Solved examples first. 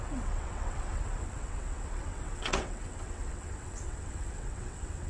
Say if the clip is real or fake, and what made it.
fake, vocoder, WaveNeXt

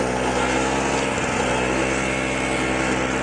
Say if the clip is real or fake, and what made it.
real